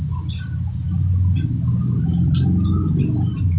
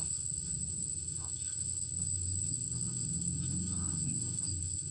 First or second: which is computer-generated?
second